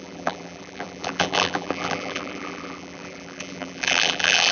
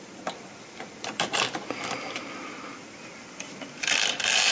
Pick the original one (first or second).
second